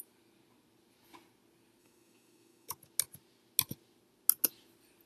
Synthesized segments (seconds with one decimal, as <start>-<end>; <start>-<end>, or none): 1.8-2.7